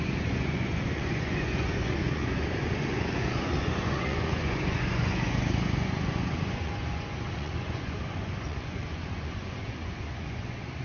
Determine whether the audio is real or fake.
fake